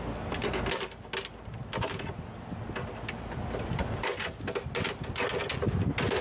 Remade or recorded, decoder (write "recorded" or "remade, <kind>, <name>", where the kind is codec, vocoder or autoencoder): recorded